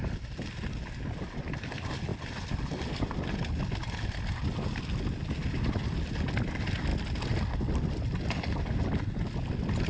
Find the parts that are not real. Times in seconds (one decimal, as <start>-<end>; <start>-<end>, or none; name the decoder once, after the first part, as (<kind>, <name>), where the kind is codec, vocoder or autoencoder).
none